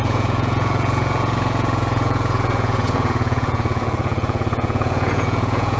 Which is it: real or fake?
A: fake